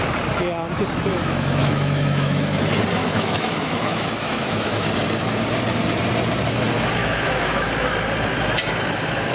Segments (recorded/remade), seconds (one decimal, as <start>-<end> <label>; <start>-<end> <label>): 0.0-1.1 recorded; 1.1-2.6 remade; 2.6-3.0 recorded; 3.0-4.9 remade; 4.9-7.0 recorded; 7.0-7.7 remade; 7.7-9.3 recorded